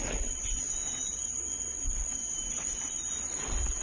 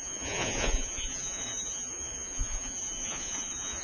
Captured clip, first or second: first